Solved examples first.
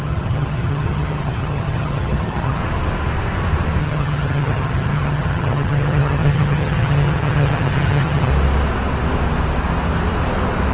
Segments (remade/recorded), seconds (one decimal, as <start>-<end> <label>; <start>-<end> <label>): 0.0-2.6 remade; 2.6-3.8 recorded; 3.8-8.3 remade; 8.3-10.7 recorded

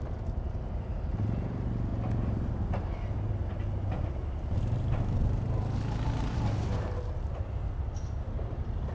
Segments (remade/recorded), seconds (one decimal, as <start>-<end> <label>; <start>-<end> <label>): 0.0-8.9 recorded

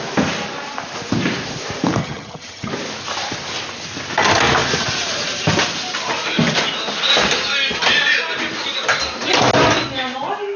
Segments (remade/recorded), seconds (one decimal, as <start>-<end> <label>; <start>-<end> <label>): 0.0-2.0 recorded; 2.0-2.7 remade; 2.7-10.6 recorded

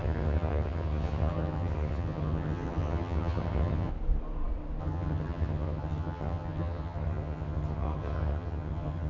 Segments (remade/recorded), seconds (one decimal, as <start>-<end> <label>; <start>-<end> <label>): 0.0-3.9 remade; 3.9-4.8 recorded; 4.8-9.1 remade

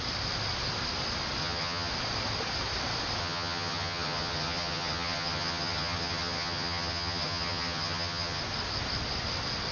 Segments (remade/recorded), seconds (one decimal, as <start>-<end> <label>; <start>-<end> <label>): 0.0-1.4 recorded; 1.4-1.9 remade; 1.9-3.2 recorded; 3.2-8.4 remade; 8.4-9.7 recorded

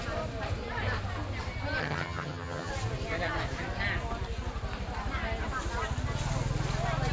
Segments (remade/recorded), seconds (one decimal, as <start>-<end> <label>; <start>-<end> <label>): 0.0-1.8 recorded; 1.8-2.7 remade; 2.7-7.1 recorded

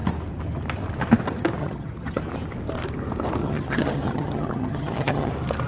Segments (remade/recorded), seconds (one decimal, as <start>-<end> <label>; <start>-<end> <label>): 0.0-1.6 recorded; 1.6-2.2 remade; 2.2-3.4 recorded; 3.4-5.3 remade; 5.3-5.7 recorded